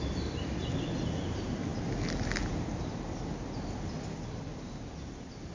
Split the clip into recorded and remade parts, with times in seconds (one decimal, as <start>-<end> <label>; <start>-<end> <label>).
0.0-5.5 recorded